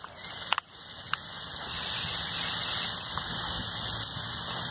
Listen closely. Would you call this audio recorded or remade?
recorded